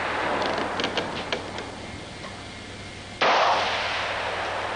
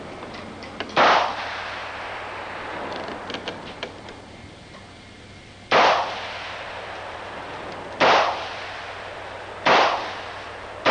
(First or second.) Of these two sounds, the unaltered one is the first